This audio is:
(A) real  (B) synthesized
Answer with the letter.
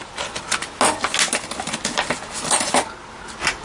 A